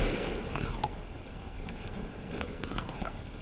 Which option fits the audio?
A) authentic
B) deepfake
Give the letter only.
B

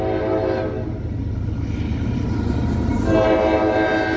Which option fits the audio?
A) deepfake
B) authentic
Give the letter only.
B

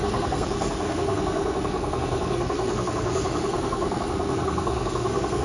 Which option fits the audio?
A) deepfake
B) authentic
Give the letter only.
A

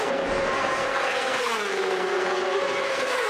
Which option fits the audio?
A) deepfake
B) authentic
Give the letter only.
A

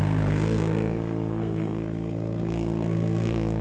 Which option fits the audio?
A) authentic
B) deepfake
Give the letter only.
B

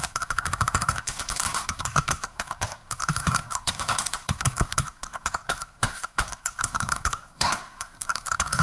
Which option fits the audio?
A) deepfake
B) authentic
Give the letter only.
A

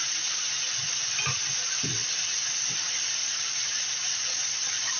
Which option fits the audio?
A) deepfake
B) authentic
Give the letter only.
B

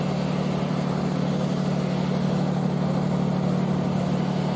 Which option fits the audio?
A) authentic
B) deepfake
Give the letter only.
A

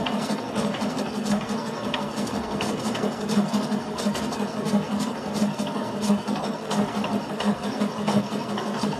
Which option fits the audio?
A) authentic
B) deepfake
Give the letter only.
B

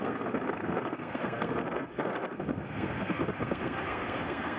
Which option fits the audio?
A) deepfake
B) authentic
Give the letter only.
A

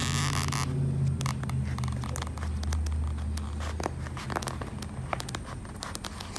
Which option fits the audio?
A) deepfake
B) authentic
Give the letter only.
B